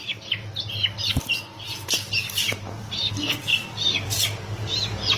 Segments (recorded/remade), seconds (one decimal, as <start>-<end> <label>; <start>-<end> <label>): 0.0-3.1 recorded; 3.1-3.5 remade; 3.5-5.2 recorded